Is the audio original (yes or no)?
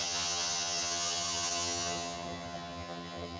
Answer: no